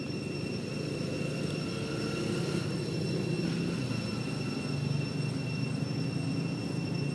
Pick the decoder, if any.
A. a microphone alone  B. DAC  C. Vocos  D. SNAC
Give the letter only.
A